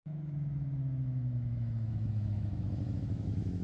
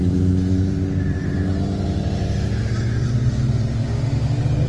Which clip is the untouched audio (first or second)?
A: second